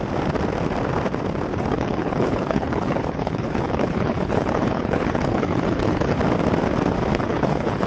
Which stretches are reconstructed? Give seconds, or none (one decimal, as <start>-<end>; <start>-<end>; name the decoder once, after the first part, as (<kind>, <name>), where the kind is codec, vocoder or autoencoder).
1.5-6.2 (codec, HILCodec); 7.1-7.9